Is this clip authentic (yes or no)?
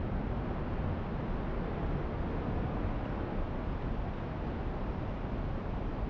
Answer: yes